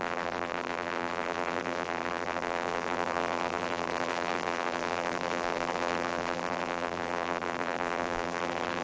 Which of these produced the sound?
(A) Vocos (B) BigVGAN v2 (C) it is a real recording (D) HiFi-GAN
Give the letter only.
B